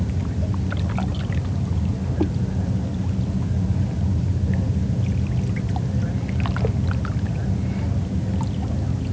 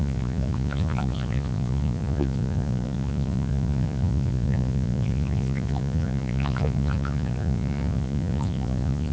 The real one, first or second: first